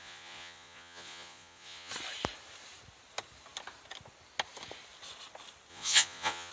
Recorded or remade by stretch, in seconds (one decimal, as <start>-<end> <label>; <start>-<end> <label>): 0.0-1.9 remade; 1.9-5.7 recorded; 5.7-6.5 remade